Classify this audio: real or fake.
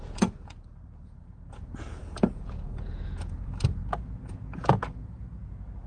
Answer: fake